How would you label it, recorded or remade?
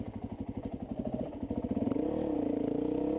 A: recorded